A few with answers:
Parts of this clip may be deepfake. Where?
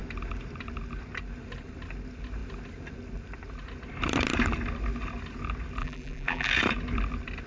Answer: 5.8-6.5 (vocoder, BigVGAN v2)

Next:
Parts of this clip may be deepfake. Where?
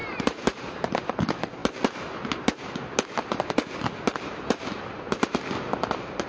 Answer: 0.0-0.8 (vocoder, BigVGAN v2)